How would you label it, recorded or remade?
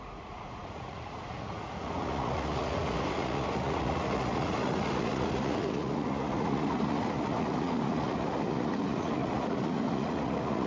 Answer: remade